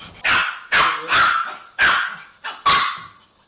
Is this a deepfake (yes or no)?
no